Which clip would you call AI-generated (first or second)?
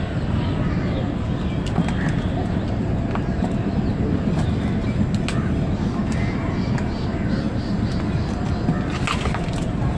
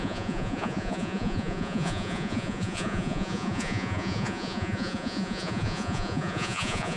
second